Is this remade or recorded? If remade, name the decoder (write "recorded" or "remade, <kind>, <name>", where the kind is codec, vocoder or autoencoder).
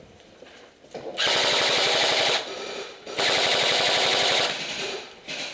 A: recorded